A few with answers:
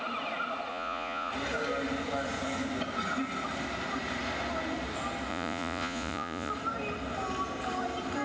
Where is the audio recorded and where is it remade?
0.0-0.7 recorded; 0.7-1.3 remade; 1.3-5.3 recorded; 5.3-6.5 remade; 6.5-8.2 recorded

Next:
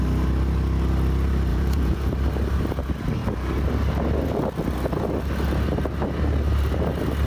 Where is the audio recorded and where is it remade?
0.0-1.5 recorded; 1.5-2.1 remade; 2.1-7.3 recorded

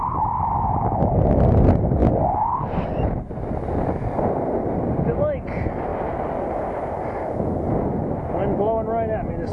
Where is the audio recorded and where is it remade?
0.0-9.5 recorded

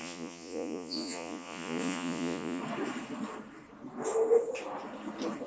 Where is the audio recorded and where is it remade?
0.0-2.6 remade; 2.6-5.5 recorded

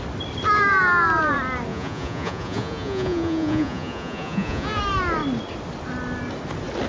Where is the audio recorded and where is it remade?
0.0-1.7 recorded; 1.7-4.8 remade; 4.8-6.9 recorded

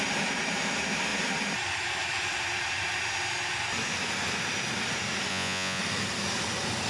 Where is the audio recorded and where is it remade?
0.0-5.3 recorded; 5.3-5.8 remade; 5.8-6.9 recorded

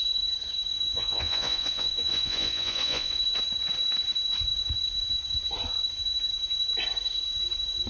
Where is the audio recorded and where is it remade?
0.0-0.7 recorded; 0.7-3.2 remade; 3.2-7.9 recorded